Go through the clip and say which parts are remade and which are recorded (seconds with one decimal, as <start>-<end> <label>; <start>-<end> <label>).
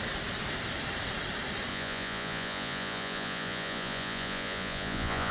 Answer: 0.0-1.7 recorded; 1.7-5.3 remade